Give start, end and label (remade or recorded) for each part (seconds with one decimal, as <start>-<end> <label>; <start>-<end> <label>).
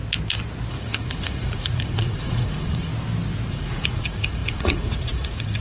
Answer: 0.0-0.7 recorded; 0.7-2.9 remade; 2.9-3.5 recorded; 3.5-5.6 remade